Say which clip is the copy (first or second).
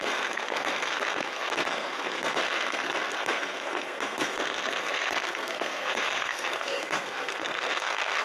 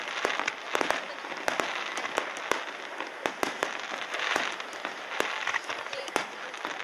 first